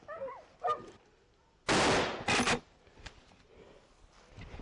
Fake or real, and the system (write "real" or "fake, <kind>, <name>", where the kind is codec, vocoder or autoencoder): real